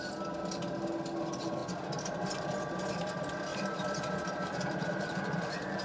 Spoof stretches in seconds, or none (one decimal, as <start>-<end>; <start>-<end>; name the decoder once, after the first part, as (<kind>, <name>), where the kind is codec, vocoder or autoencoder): 3.5-5.8 (vocoder, BigVGAN v2)